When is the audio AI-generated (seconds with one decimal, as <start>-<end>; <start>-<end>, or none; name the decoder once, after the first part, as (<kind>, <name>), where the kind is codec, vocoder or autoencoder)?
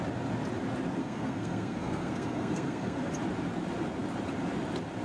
1.0-3.1 (codec, SNAC)